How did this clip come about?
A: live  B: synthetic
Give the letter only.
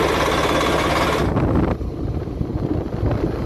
A